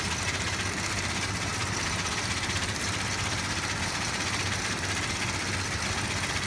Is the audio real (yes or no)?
yes